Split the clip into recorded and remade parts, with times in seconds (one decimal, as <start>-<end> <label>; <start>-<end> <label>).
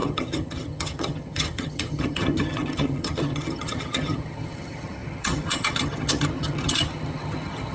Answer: 0.0-7.7 remade